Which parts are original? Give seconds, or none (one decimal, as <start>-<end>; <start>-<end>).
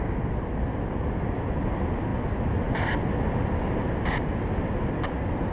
0.0-5.5